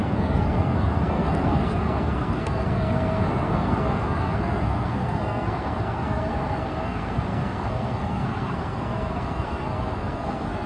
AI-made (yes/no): yes